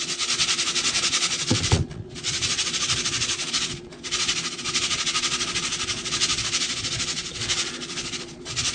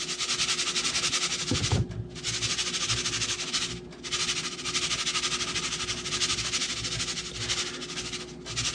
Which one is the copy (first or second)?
first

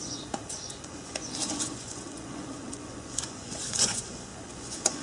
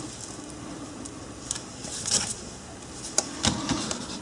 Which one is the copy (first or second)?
first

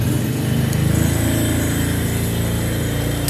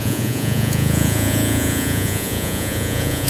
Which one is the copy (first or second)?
second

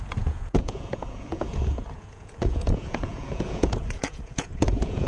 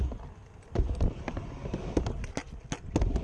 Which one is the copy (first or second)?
first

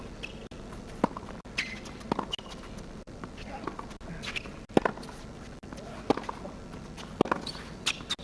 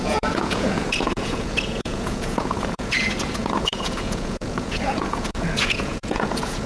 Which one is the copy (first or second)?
second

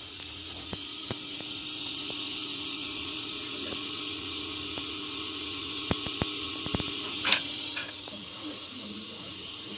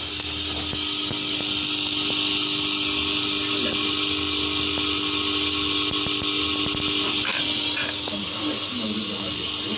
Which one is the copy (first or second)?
first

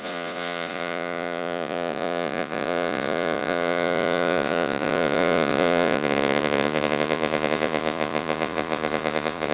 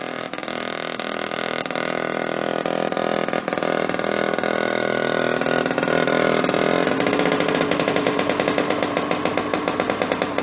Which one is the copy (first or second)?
first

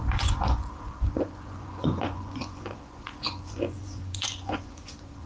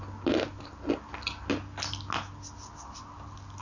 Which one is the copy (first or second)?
first